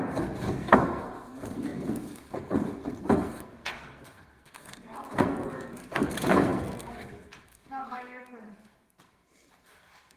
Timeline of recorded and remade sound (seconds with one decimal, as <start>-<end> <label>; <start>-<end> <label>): 0.0-10.2 remade